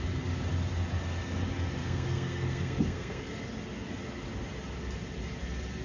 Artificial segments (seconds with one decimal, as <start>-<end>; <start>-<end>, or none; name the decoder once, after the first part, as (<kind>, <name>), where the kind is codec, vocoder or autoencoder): 1.8-3.3 (codec, SNAC)